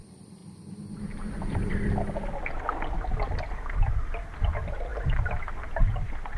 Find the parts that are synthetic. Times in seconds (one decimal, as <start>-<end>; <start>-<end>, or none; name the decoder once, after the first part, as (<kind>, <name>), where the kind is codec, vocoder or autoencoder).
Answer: 0.0-4.9 (vocoder, BigVGAN v2); 5.8-6.4